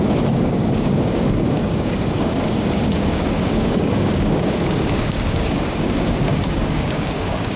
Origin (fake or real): fake